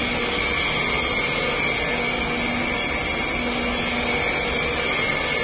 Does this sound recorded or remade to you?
recorded